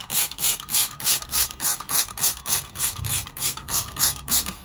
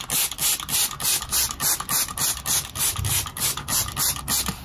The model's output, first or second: first